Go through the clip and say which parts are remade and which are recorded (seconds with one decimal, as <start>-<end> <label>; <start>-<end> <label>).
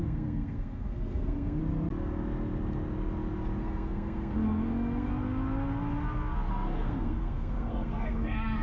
0.0-1.6 remade; 1.6-3.6 recorded; 3.6-5.1 remade; 5.1-6.5 recorded; 6.5-8.6 remade